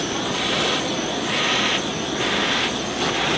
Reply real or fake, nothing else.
real